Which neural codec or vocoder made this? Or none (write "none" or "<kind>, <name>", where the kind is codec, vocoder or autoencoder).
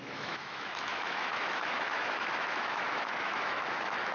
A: autoencoder, DAC-VAE